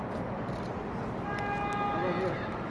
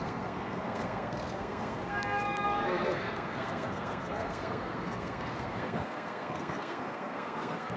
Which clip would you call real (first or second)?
first